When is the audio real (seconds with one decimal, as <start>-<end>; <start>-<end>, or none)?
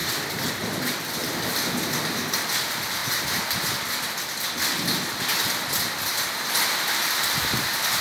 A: 3.0-6.9